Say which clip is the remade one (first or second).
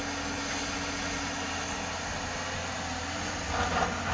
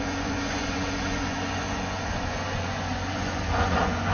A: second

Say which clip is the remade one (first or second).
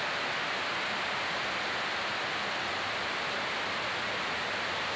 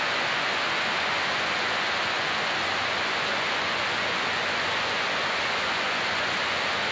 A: second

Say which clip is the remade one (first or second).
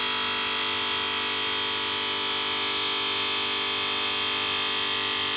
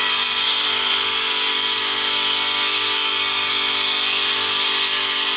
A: second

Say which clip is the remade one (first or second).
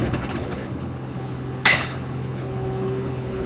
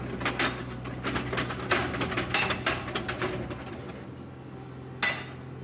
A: first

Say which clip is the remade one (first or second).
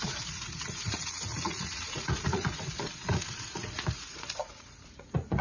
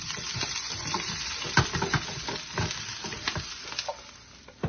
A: first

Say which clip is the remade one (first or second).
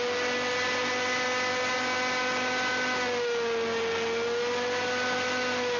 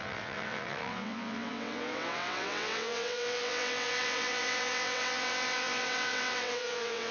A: second